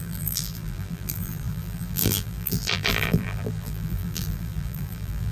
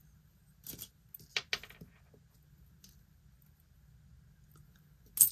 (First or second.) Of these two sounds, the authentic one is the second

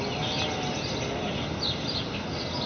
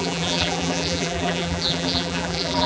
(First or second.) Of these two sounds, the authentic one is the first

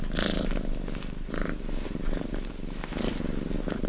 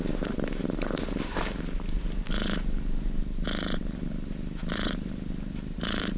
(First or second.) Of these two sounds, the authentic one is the first